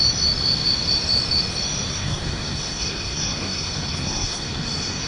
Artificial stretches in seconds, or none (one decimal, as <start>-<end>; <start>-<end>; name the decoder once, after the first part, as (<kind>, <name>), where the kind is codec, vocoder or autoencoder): 1.9-5.1 (codec, SNAC)